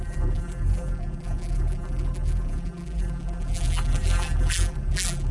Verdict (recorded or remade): remade